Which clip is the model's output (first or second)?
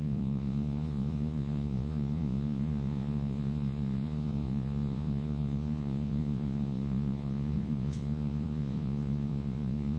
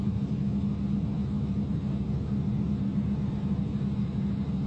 first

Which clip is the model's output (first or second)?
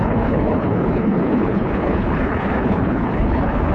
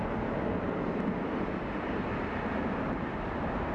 first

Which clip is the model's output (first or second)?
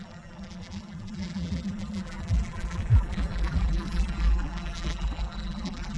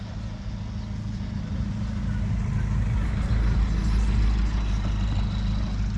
first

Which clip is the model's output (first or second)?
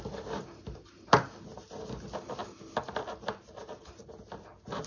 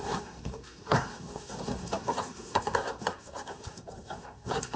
second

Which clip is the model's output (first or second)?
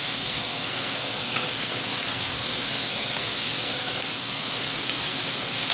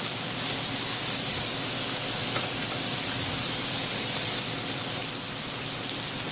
first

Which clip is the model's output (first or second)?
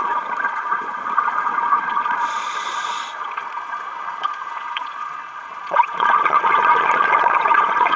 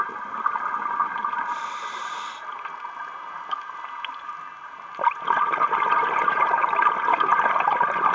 first